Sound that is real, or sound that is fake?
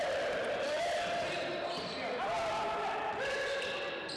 real